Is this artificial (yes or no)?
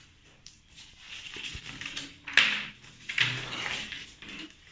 no